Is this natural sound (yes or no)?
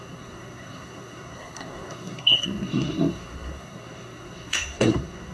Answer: no